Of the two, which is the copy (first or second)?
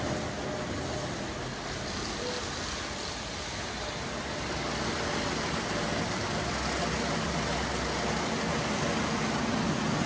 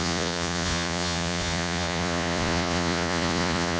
second